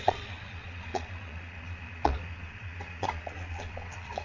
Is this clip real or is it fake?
fake